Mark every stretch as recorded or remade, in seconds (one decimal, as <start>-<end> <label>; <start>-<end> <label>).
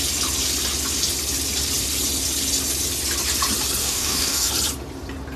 0.0-3.8 recorded; 3.8-4.5 remade; 4.5-5.4 recorded